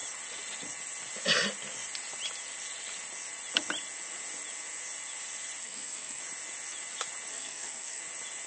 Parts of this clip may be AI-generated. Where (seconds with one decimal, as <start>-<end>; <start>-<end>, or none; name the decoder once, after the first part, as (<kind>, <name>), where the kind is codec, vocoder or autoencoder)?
5.6-6.2 (codec, SNAC); 7.3-8.0